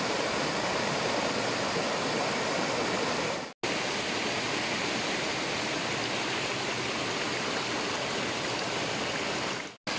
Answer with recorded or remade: recorded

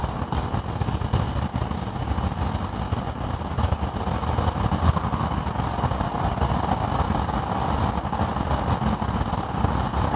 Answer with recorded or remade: recorded